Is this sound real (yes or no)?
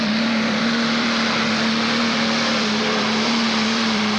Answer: no